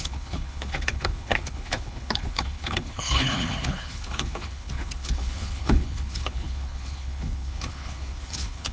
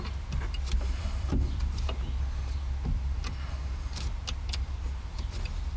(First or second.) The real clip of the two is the second